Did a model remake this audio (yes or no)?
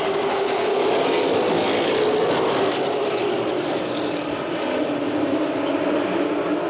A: no